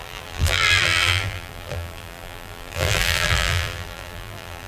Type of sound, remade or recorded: remade